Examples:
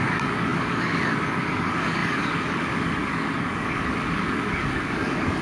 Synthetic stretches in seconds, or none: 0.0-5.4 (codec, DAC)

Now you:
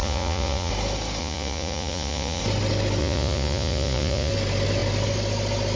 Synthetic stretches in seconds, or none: 0.0-0.7 (vocoder, Vocos); 1.2-2.4; 3.0-4.3

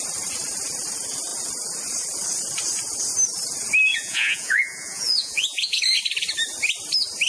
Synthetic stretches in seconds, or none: 3.9-5.8 (vocoder, Vocos)

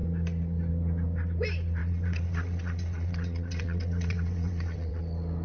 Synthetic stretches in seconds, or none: 1.8-5.0 (vocoder, WaveNeXt)

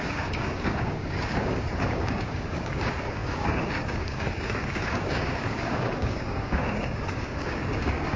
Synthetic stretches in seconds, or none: 0.0-8.2 (codec, DAC)

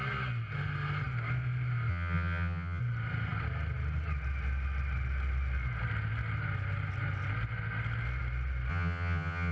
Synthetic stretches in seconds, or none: 1.9-2.8 (vocoder, HiFi-GAN); 8.7-9.5